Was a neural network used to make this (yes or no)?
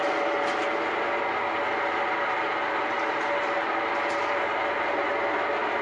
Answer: no